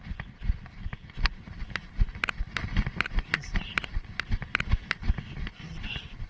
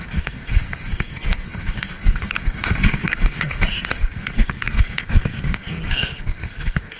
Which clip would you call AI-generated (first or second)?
second